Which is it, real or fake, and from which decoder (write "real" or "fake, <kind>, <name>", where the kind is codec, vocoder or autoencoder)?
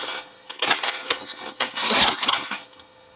fake, codec, SNAC